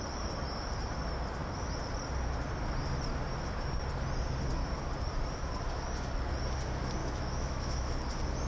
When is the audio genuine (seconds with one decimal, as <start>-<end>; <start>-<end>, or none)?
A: 0.0-7.0; 7.9-8.5